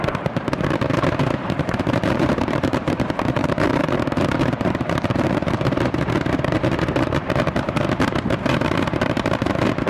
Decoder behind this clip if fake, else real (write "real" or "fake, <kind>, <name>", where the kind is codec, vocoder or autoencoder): fake, vocoder, BigVGAN v2